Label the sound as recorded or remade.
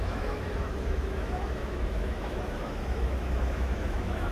remade